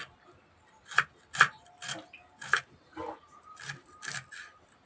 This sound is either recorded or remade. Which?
recorded